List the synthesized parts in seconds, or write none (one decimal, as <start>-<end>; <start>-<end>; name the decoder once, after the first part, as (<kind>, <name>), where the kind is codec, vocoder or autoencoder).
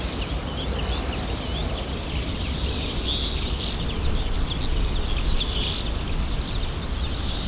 none